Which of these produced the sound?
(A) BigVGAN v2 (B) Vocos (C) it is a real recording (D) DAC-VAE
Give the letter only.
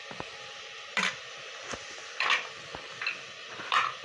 A